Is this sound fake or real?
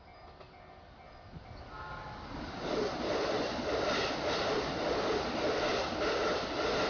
real